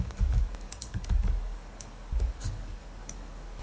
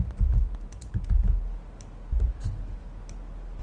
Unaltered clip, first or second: second